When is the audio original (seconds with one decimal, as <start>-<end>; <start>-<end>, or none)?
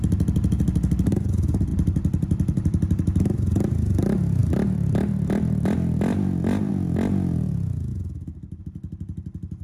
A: 0.0-1.7; 3.2-4.4; 6.7-9.6